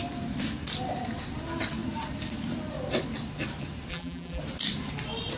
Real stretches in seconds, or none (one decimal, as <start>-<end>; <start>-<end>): 0.0-3.9; 4.4-5.4